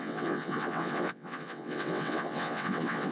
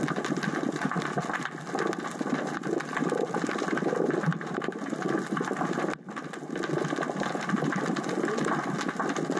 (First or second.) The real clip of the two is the second